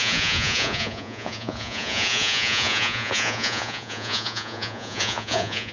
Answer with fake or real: fake